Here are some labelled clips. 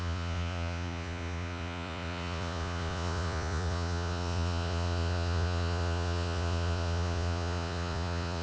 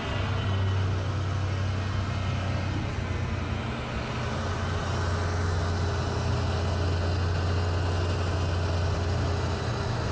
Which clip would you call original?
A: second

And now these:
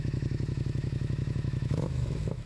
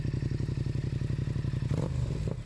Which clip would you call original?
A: second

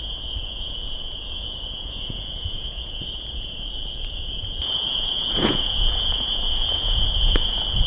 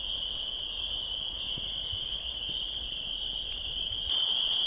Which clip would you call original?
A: second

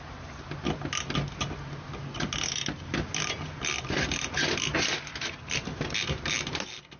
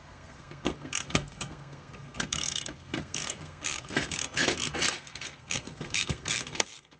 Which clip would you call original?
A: first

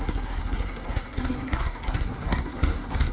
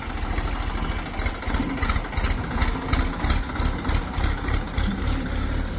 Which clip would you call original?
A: second